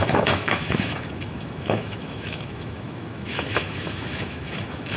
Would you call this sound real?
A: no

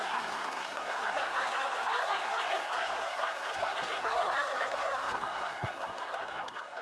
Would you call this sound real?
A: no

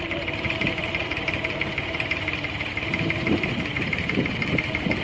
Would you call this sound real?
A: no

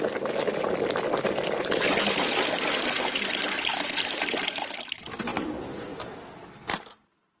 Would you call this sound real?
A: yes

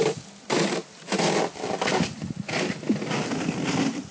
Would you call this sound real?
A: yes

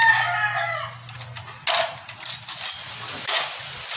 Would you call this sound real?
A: yes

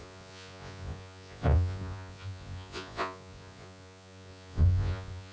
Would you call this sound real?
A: no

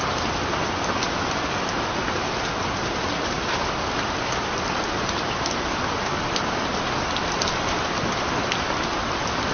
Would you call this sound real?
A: yes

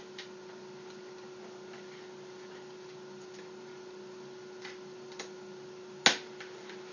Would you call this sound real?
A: yes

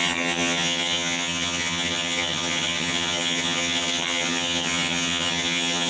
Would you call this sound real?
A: no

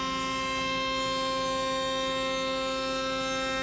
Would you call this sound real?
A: yes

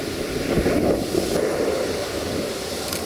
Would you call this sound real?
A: yes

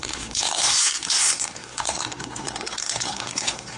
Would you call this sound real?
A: no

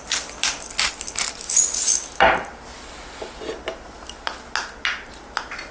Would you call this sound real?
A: yes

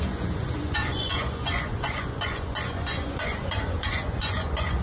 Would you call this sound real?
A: no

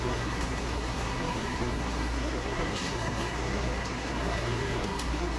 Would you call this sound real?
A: no